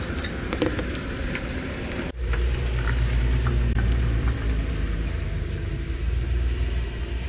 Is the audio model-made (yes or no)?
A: yes